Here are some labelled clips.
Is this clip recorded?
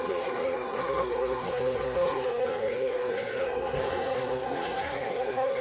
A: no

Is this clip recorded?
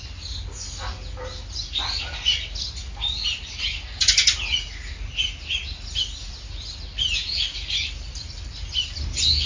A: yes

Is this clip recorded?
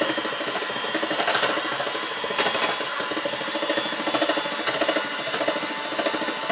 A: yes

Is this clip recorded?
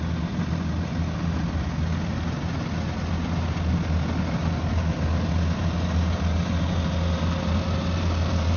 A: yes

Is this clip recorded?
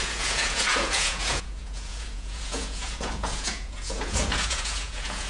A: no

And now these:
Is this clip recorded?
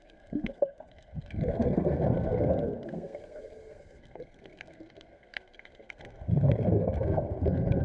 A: no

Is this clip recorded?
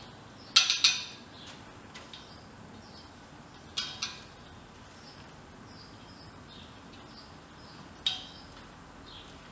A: yes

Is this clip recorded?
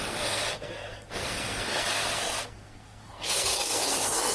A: no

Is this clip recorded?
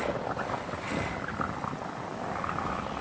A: yes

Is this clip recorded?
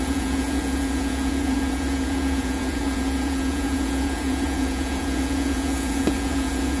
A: no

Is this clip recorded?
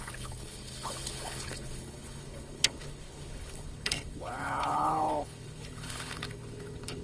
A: no